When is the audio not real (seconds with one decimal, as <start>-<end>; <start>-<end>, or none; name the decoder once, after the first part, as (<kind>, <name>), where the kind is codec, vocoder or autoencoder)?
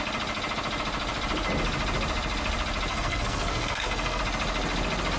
2.9-4.2 (codec, SNAC)